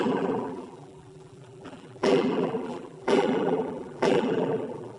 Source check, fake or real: fake